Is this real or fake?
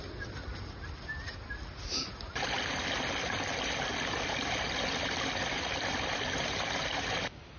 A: real